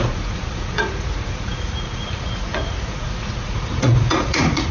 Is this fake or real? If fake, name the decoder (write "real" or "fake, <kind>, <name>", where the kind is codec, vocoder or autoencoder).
fake, vocoder, Vocos